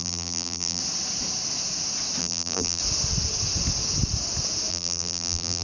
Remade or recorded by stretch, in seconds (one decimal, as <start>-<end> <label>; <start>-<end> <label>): 0.0-0.8 remade; 0.8-2.2 recorded; 2.2-2.8 remade; 2.8-4.7 recorded; 4.7-5.6 remade